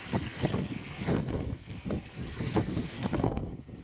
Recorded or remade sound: remade